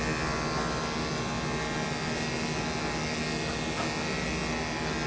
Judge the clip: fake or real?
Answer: real